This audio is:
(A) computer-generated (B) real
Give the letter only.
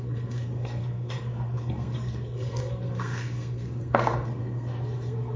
A